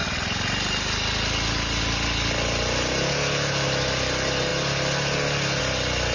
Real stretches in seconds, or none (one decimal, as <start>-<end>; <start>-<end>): 0.0-6.1